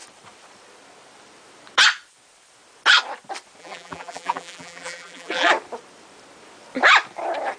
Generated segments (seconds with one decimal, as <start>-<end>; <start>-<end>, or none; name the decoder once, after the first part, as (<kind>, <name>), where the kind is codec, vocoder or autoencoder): 3.6-5.5 (vocoder, BigVGAN v2)